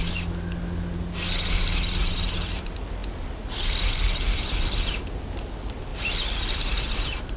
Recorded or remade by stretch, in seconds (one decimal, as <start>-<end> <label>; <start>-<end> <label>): 0.0-7.4 recorded